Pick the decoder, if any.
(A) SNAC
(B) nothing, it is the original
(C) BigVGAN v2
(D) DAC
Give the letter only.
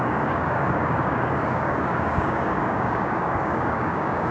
D